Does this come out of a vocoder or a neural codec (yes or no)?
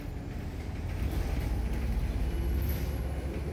yes